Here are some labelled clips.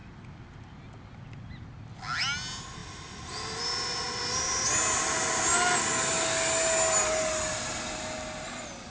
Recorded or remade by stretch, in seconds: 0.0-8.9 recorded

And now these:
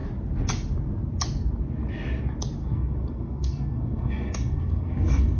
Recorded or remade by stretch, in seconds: 0.0-2.6 recorded; 2.6-5.4 remade

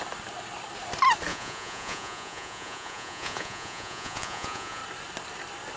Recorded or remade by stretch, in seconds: 0.0-1.3 recorded; 1.3-4.8 remade; 4.8-5.8 recorded

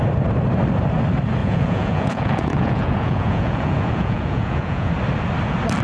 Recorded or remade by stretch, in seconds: 0.0-1.4 recorded; 1.4-4.9 remade; 4.9-5.8 recorded

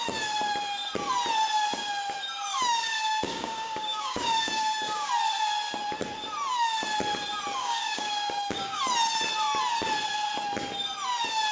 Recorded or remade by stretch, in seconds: 0.0-2.5 recorded; 2.5-5.1 remade; 5.1-7.6 recorded; 7.6-8.8 remade; 8.8-11.5 recorded

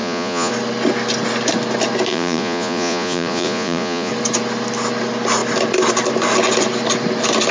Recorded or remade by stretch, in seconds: 0.0-0.5 remade; 0.5-2.1 recorded; 2.1-4.1 remade; 4.1-7.5 recorded

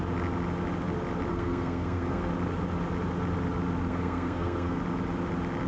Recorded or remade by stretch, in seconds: 0.0-1.3 recorded; 1.3-2.3 remade; 2.3-3.9 recorded; 3.9-4.8 remade; 4.8-5.7 recorded

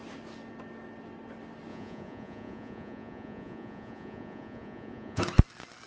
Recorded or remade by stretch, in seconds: 0.0-1.7 recorded; 1.7-5.2 remade; 5.2-5.9 recorded